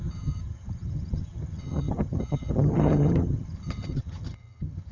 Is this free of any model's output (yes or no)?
no